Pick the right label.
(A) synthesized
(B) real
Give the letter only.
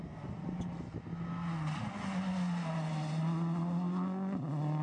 B